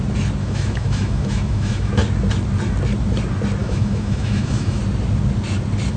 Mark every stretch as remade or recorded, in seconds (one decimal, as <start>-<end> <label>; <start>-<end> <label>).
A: 0.0-0.4 recorded; 0.4-1.9 remade; 1.9-3.6 recorded; 3.6-4.8 remade; 4.8-6.0 recorded